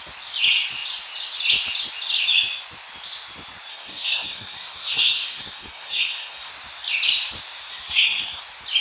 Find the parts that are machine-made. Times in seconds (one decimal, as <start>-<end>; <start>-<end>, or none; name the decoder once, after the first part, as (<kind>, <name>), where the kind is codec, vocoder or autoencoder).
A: 3.7-6.5 (codec, SNAC); 7.7-8.4